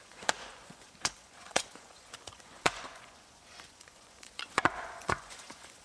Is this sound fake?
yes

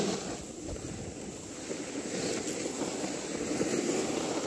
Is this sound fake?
no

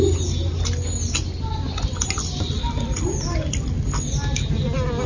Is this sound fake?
no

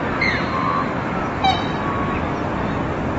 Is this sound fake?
no